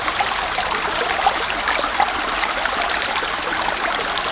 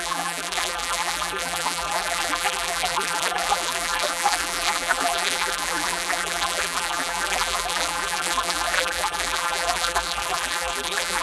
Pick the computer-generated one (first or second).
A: second